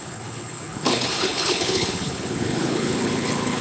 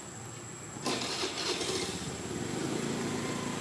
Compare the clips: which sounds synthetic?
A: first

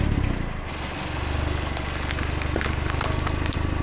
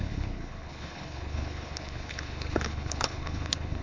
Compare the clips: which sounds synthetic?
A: second